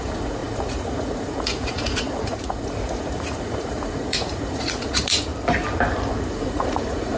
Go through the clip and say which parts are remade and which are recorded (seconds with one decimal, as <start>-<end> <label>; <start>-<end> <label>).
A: 0.0-5.3 remade; 5.3-6.2 recorded; 6.2-7.2 remade